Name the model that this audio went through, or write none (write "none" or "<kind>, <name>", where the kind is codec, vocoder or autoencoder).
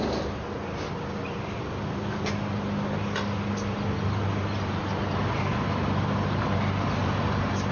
none